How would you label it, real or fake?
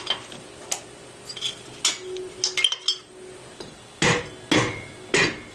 real